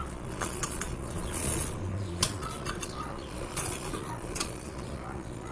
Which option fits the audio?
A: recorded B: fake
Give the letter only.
B